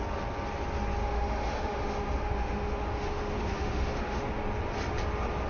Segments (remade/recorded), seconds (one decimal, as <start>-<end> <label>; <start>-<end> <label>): 0.0-1.0 recorded; 1.0-4.3 remade; 4.3-5.5 recorded